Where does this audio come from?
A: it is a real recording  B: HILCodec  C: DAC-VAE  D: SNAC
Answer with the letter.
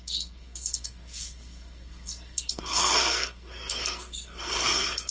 D